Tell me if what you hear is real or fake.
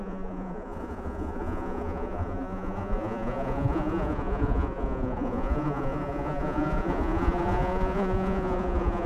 fake